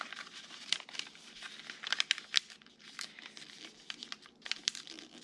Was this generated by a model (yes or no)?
no